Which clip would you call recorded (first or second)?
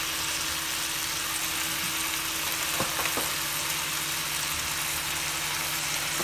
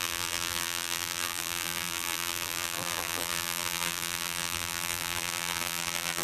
first